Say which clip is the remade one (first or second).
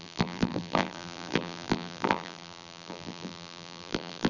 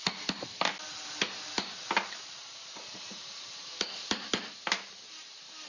first